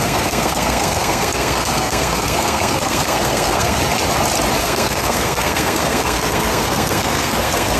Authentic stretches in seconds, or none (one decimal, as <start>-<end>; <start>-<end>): 3.8-4.6